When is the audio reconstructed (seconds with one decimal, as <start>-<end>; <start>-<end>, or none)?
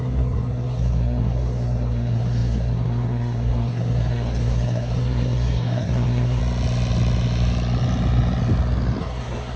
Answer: 0.0-6.4; 9.0-9.6